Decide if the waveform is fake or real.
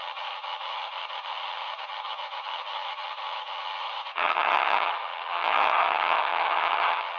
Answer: fake